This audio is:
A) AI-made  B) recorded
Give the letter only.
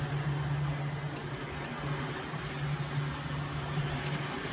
B